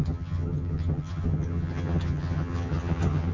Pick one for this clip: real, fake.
fake